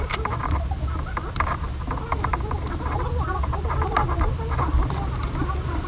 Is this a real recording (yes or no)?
yes